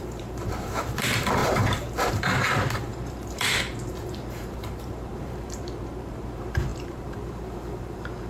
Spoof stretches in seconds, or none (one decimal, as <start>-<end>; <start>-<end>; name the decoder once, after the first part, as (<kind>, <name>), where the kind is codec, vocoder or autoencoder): 0.0-8.3 (vocoder, BigVGAN v2)